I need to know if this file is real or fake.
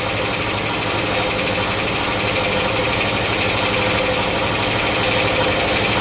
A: real